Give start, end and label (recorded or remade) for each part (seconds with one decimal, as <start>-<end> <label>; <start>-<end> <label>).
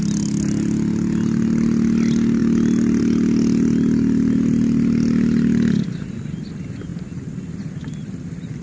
0.0-8.6 recorded